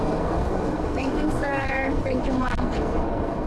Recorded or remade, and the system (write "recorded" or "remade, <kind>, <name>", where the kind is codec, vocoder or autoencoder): remade, codec, SNAC